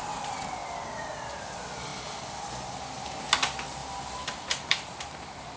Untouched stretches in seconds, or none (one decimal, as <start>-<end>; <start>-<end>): 0.0-5.6